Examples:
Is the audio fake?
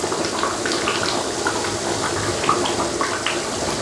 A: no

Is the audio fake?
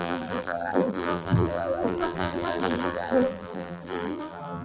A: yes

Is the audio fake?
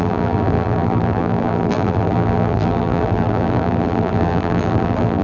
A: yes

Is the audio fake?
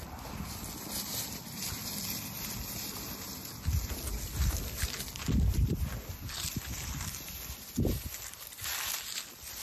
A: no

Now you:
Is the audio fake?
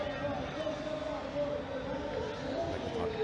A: no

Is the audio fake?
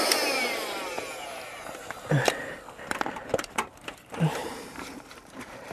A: yes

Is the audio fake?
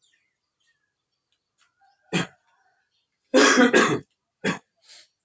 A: yes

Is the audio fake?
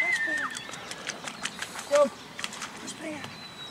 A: yes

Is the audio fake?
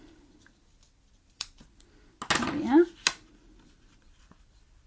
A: no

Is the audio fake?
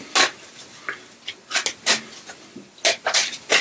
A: no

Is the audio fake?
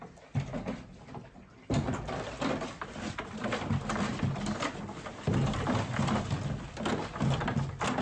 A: no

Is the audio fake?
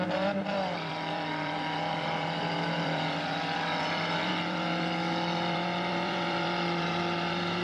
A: yes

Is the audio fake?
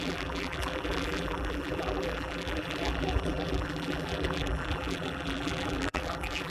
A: yes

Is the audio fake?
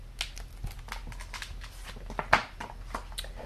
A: no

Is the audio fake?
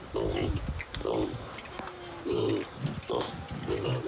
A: no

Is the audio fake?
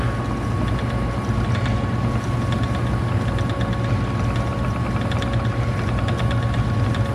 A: no